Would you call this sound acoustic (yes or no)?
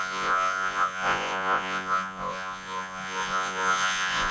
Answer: no